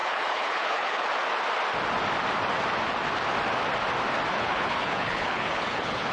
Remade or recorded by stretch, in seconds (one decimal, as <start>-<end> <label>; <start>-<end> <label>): 0.0-1.1 remade; 1.1-4.3 recorded; 4.3-6.1 remade